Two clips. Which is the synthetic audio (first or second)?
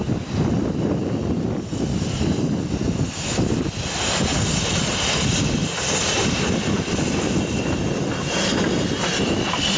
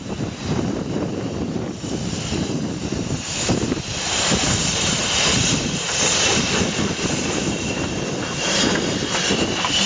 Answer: second